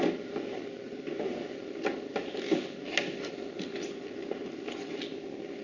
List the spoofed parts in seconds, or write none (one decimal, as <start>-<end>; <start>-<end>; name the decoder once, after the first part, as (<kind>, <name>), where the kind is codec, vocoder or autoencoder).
none